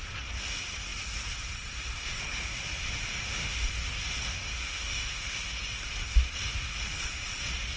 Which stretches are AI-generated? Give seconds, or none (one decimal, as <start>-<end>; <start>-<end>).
3.1-3.7; 4.3-5.4